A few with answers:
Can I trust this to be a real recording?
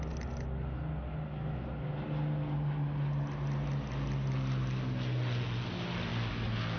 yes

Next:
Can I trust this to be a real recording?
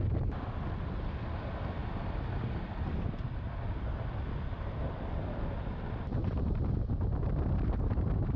yes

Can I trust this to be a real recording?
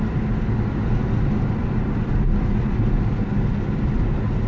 yes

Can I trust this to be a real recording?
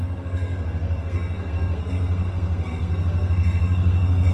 no